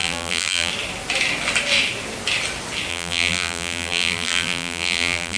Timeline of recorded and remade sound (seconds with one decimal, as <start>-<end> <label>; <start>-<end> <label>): 0.0-0.7 remade; 0.7-2.9 recorded; 2.9-5.4 remade